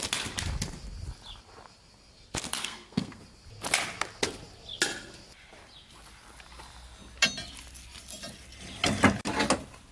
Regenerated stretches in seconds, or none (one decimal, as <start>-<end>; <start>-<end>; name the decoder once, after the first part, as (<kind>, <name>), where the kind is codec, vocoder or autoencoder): 2.6-3.2 (codec, SNAC)